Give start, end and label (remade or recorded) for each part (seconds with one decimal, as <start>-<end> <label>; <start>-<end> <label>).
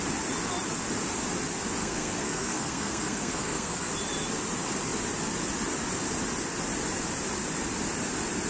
0.0-1.8 recorded; 1.8-3.9 remade; 3.9-8.5 recorded